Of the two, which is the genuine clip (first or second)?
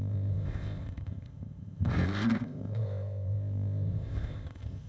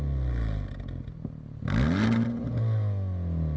second